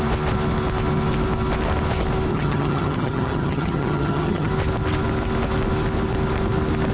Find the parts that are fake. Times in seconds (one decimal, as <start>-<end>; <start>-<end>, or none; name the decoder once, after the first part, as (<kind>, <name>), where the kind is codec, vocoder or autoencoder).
2.3-4.5 (vocoder, HiFi-GAN)